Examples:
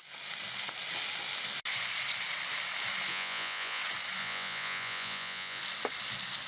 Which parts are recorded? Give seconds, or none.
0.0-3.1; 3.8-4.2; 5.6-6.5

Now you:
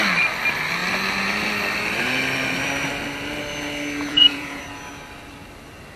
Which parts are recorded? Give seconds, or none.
0.0-4.1; 4.6-6.0

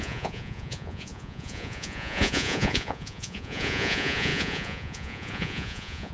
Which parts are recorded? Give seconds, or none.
none